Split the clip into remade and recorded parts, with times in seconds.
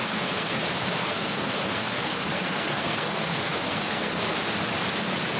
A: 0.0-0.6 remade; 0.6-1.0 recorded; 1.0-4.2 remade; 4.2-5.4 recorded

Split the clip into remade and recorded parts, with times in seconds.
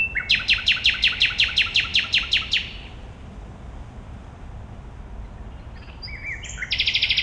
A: 0.0-7.2 recorded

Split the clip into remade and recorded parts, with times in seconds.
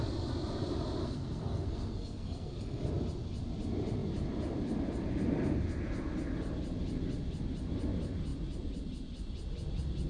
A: 0.0-1.0 recorded; 1.0-2.9 remade; 2.9-10.1 recorded